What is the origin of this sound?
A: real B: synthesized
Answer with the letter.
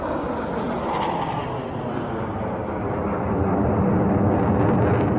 A